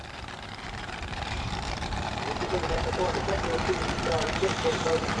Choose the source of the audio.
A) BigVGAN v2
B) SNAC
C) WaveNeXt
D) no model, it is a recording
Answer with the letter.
A